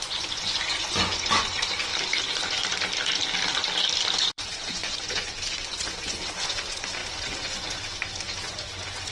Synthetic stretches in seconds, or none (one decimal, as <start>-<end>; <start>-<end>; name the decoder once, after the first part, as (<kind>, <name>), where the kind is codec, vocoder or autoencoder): 0.0-1.9 (vocoder, Vocos); 4.1-9.1